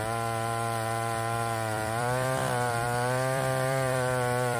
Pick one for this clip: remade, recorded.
remade